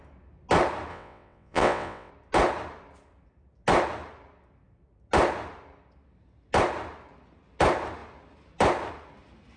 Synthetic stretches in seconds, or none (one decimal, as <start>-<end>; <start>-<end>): 0.9-2.1